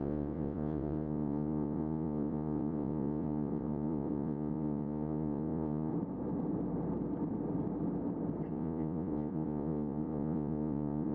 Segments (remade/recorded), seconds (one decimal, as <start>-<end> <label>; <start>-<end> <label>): 0.0-5.9 remade; 5.9-8.5 recorded; 8.5-11.1 remade